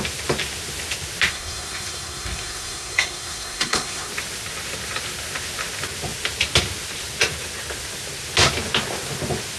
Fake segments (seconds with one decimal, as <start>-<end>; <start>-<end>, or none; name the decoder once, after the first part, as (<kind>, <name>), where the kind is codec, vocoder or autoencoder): 1.3-4.1 (codec, SNAC)